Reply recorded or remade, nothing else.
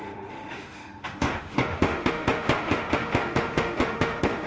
remade